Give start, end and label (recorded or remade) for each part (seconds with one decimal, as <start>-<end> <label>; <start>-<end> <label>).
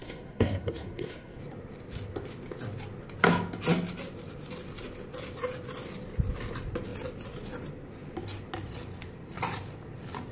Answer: 0.0-1.4 remade; 1.4-10.3 recorded